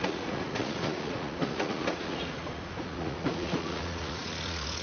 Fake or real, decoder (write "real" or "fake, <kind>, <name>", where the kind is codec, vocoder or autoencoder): fake, vocoder, Vocos